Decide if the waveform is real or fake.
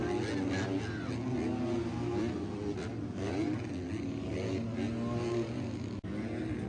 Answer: real